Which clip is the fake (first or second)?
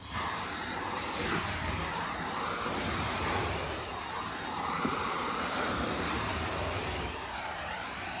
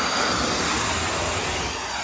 first